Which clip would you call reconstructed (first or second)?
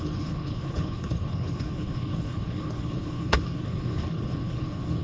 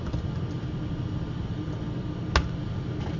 first